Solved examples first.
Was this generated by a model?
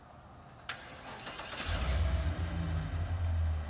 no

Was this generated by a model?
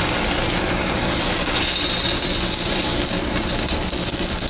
no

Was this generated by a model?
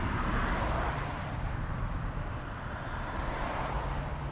yes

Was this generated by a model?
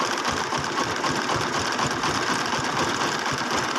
no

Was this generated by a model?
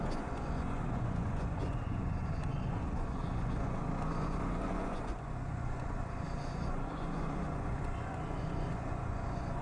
yes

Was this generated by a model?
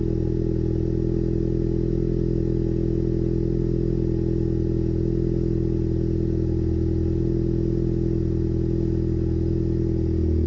no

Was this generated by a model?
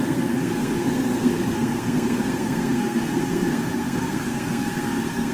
yes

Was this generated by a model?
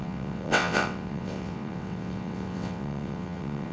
yes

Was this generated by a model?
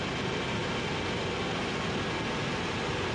no